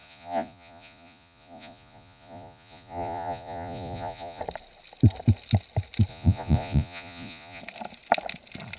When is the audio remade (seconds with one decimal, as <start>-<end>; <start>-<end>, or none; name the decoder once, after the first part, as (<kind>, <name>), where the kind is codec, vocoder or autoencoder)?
0.0-4.4 (vocoder, Vocos); 6.1-7.6